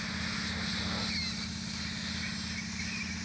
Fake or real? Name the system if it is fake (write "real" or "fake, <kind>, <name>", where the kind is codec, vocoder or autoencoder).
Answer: real